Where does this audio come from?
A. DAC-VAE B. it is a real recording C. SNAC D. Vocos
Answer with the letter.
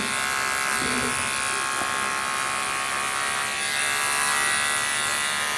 B